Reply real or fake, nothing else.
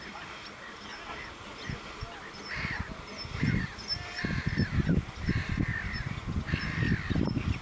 real